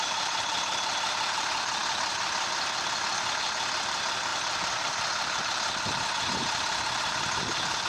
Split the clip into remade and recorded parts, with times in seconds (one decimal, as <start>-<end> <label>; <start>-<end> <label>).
0.0-7.9 remade